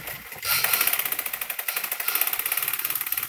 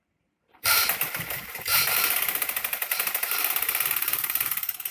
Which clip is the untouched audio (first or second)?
first